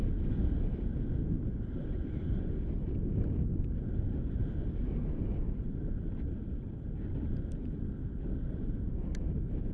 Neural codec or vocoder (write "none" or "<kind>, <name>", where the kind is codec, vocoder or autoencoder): none